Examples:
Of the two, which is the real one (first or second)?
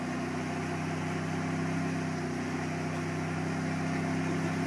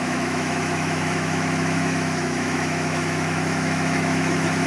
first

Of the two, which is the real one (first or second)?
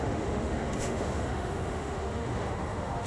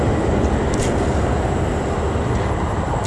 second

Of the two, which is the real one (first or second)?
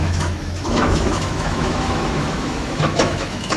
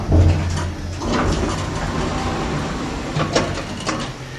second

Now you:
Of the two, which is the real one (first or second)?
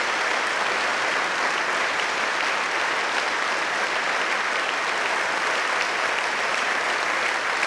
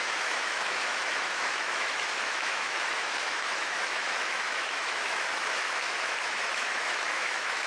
first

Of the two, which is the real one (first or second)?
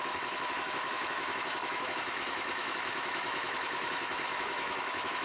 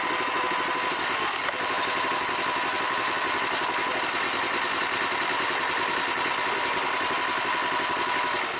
second